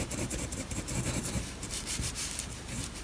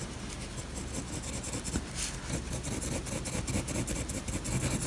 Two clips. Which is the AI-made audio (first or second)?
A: first